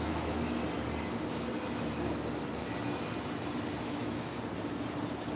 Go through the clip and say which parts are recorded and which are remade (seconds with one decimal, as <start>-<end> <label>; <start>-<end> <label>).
0.0-0.6 remade; 0.6-3.8 recorded; 3.8-4.3 remade; 4.3-5.4 recorded